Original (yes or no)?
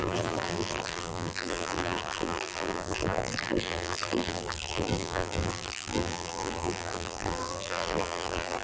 no